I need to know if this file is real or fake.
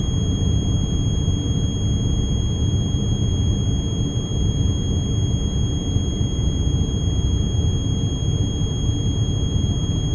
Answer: real